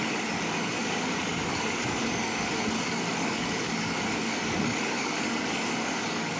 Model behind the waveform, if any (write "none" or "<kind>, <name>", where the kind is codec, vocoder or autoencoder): codec, DAC